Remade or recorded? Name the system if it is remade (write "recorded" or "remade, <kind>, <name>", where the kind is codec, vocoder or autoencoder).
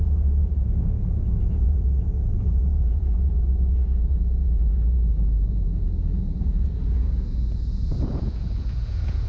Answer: remade, vocoder, Vocos